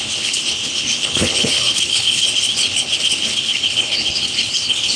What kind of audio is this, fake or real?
fake